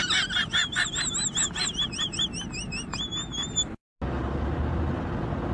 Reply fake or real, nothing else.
real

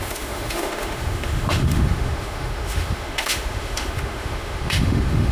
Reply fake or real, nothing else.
fake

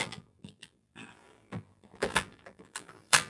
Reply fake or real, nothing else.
fake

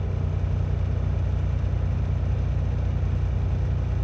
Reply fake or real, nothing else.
real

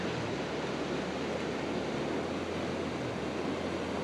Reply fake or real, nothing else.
real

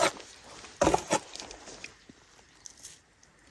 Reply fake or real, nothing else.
real